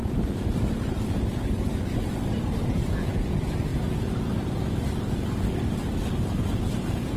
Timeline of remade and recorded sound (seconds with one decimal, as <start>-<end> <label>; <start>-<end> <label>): 0.0-7.2 recorded